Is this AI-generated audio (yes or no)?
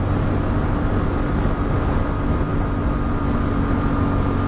no